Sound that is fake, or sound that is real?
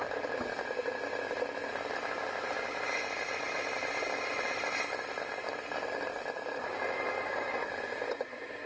real